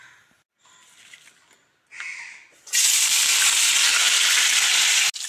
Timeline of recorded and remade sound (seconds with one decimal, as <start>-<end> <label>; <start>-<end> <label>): 0.0-5.3 recorded